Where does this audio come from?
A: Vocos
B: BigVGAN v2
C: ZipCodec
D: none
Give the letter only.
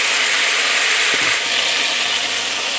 D